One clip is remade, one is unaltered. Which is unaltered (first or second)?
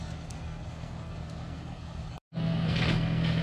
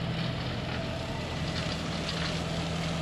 second